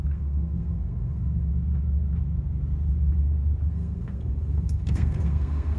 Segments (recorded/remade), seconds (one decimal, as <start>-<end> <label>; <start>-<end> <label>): 0.0-1.5 remade; 1.5-3.7 recorded; 3.7-5.8 remade